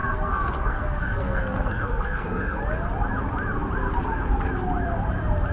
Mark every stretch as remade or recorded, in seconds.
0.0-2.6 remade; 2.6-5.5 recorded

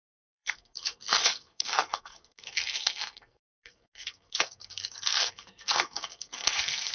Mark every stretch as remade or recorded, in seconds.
0.0-6.9 remade

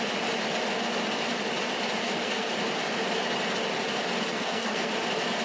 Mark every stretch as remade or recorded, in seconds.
0.0-2.0 recorded; 2.0-2.5 remade; 2.5-4.3 recorded; 4.3-4.9 remade; 4.9-5.4 recorded

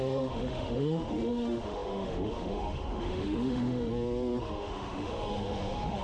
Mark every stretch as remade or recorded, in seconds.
0.0-3.9 remade; 3.9-4.4 recorded; 4.4-6.0 remade

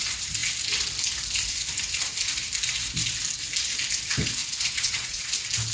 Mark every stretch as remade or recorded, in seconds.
0.0-4.4 recorded; 4.4-5.3 remade; 5.3-5.7 recorded

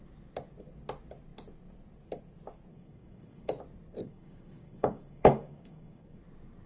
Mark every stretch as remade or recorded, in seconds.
0.0-2.7 recorded; 2.7-3.6 remade; 3.6-4.0 recorded; 4.0-6.2 remade; 6.2-6.7 recorded